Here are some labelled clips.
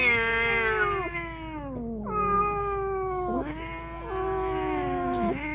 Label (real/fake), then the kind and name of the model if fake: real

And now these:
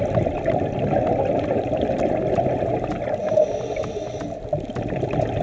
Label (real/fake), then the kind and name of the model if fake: real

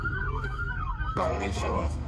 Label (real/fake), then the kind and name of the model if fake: fake, codec, SNAC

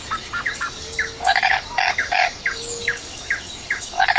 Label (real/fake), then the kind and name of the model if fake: fake, codec, DAC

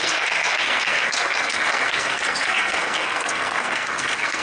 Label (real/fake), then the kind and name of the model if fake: fake, codec, SNAC